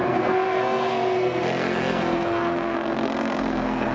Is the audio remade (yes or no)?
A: yes